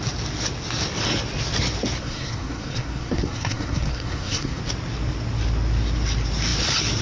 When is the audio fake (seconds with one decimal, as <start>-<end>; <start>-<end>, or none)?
2.0-4.6